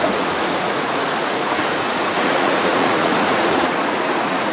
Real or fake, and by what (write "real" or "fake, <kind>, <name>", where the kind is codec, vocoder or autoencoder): fake, vocoder, Vocos